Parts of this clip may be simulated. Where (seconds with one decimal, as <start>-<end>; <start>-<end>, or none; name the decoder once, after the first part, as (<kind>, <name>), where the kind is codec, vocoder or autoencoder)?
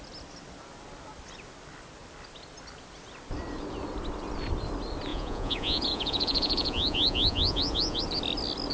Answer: 5.1-8.0 (vocoder, Vocos)